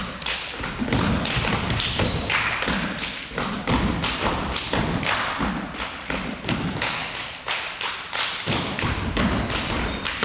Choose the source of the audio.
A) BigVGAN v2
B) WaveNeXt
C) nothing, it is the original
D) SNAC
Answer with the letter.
C